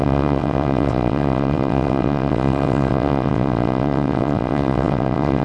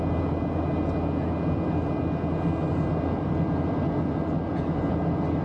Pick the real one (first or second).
second